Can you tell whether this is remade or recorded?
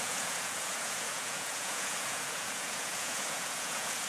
remade